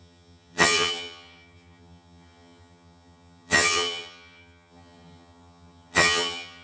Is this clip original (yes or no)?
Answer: no